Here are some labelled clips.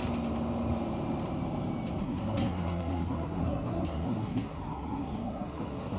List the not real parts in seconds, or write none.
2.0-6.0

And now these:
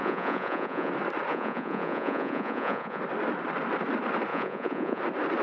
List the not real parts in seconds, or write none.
0.0-0.9; 1.3-3.0; 4.3-5.0